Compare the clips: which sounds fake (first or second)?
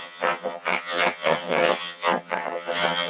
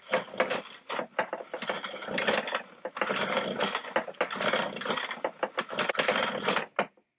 first